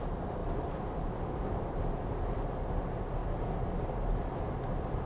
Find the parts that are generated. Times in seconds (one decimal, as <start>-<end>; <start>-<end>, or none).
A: 0.4-1.8